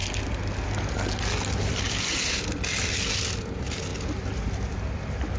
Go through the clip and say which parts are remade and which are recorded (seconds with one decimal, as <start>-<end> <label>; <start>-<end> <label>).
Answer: 0.0-5.4 recorded